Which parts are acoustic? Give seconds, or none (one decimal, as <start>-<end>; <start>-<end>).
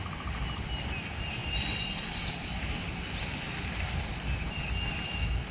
0.0-5.5